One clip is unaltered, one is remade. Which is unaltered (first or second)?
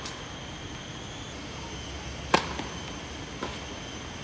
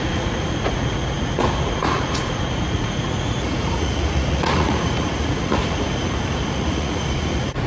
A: first